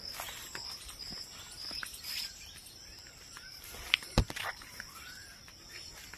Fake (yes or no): no